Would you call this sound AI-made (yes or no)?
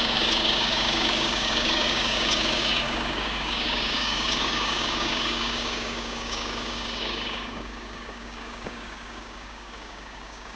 yes